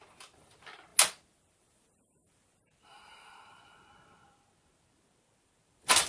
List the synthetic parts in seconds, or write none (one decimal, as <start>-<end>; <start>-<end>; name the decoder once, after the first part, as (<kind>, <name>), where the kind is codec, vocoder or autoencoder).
none